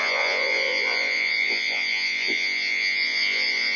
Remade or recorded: remade